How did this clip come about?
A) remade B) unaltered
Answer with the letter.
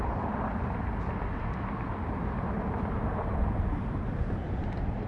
B